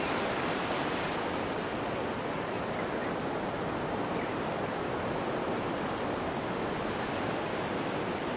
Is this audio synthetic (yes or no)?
no